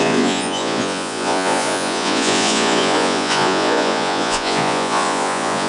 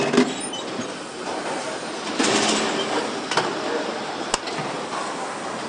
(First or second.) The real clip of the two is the second